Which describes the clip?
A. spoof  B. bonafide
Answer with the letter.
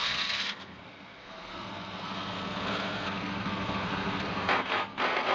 A